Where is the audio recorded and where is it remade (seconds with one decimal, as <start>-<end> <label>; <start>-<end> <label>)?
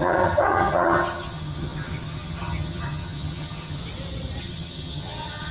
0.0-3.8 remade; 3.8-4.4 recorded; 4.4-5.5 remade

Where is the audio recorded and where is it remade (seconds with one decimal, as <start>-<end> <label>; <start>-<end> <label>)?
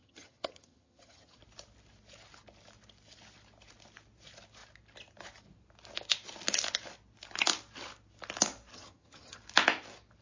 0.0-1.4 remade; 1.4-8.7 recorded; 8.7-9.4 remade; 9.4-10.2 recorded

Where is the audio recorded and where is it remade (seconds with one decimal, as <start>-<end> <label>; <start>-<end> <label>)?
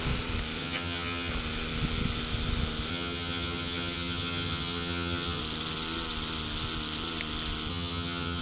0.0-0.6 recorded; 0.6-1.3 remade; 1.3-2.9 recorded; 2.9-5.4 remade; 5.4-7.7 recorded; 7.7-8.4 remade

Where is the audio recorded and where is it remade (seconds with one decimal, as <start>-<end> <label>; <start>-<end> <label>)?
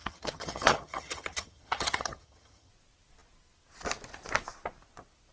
0.0-2.7 remade; 2.7-5.3 recorded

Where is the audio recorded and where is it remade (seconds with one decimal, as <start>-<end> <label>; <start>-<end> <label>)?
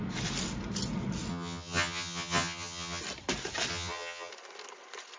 0.0-1.3 recorded; 1.3-3.0 remade; 3.0-3.7 recorded; 3.7-4.3 remade; 4.3-5.2 recorded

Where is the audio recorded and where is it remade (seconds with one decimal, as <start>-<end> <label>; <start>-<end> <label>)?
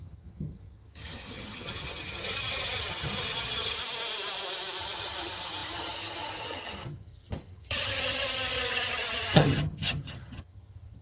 0.0-3.8 remade; 3.8-4.8 recorded; 4.8-11.0 remade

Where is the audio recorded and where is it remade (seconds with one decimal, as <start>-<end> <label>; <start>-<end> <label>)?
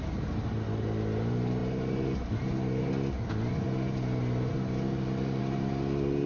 0.0-6.3 recorded